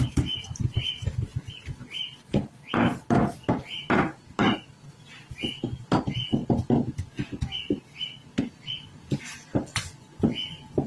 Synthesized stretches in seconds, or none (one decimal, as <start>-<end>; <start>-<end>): 9.7-10.9